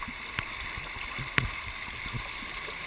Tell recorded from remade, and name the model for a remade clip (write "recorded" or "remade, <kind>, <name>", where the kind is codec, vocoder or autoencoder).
recorded